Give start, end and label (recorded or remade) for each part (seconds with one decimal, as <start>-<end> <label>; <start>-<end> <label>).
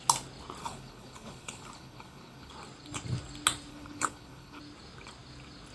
0.0-0.6 recorded; 0.6-2.5 remade; 2.5-3.7 recorded; 3.7-4.6 remade; 4.6-5.7 recorded